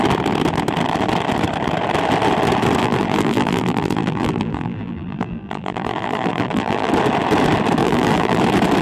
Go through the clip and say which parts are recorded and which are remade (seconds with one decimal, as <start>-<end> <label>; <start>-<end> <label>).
0.0-2.8 recorded; 2.8-6.9 remade; 6.9-7.8 recorded; 7.8-8.4 remade; 8.4-8.8 recorded